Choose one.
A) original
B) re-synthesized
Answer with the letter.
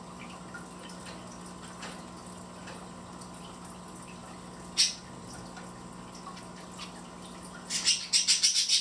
A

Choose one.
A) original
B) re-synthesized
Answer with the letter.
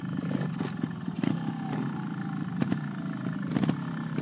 A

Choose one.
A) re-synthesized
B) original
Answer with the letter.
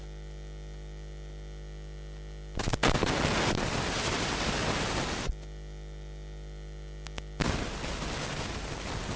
B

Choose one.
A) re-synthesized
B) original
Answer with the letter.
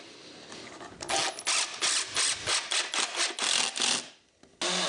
B